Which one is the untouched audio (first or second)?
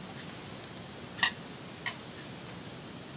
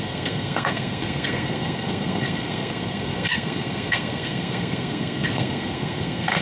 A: first